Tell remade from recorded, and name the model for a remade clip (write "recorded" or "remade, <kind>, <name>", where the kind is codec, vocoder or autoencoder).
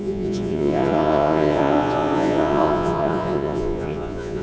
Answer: remade, vocoder, Vocos